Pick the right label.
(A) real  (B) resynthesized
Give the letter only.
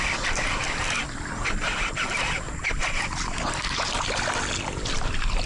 B